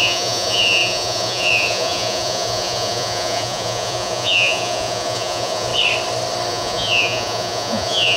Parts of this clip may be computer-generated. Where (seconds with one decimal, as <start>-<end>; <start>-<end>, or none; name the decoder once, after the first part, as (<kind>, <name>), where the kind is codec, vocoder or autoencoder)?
0.0-5.7 (vocoder, Vocos); 6.5-8.2